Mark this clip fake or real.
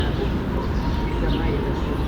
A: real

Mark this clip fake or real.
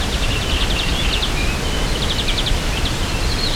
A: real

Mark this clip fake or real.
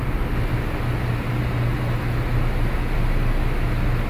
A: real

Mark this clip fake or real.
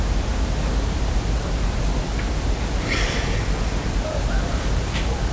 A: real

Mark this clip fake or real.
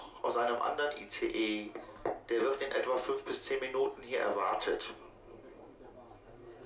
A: real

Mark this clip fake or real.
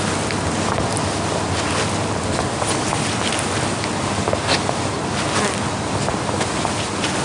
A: real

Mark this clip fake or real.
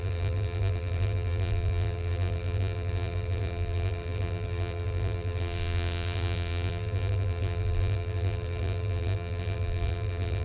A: fake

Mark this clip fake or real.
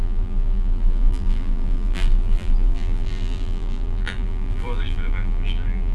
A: fake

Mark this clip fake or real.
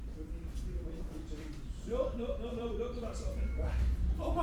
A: fake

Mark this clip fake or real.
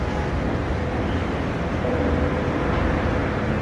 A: fake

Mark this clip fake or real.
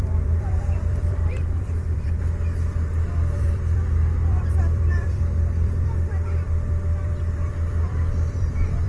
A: fake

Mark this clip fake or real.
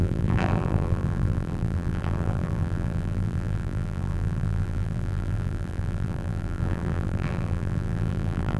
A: fake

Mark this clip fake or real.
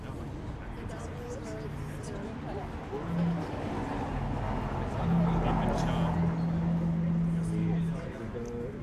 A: real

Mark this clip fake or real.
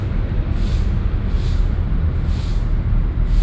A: real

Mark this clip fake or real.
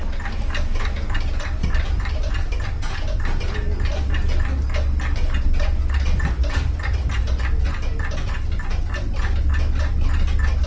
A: real